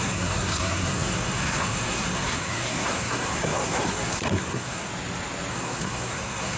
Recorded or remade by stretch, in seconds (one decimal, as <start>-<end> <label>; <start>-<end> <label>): 0.0-4.9 remade; 4.9-5.5 recorded; 5.5-6.6 remade